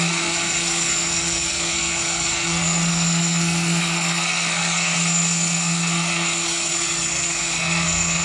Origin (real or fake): fake